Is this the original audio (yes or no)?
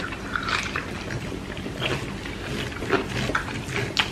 yes